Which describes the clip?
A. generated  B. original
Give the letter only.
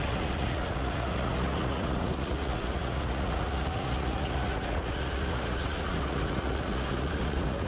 A